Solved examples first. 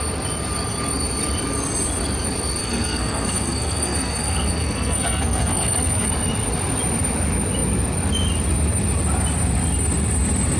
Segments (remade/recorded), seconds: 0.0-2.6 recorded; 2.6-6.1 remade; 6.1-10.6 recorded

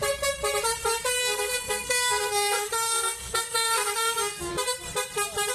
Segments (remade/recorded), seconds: 0.0-1.2 recorded; 1.2-4.5 remade; 4.5-5.5 recorded